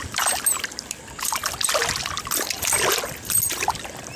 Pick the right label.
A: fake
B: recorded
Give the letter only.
B